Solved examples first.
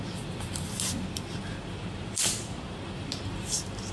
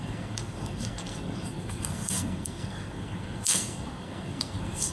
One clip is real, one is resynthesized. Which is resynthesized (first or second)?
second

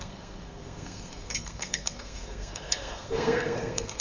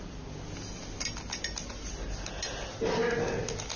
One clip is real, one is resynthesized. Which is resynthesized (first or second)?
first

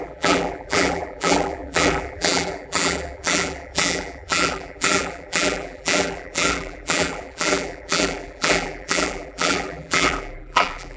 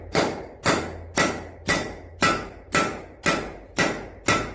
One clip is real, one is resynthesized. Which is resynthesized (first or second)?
first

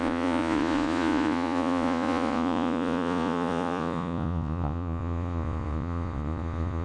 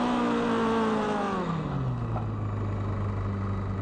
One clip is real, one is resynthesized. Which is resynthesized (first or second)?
first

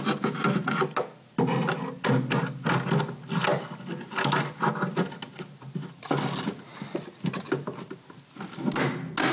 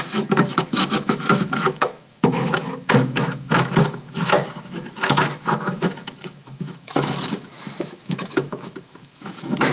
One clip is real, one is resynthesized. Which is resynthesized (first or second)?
second